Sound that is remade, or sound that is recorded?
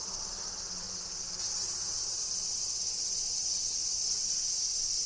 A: recorded